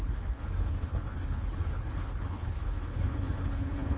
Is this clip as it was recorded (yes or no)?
no